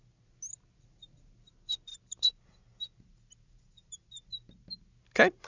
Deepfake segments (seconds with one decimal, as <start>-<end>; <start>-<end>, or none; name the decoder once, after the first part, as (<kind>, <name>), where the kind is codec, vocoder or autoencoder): none